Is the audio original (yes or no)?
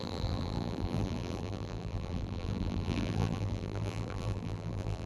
no